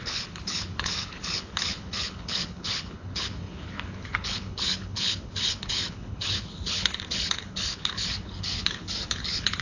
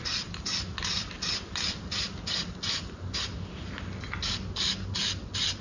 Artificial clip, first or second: first